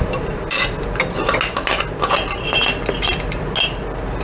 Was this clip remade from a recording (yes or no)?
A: no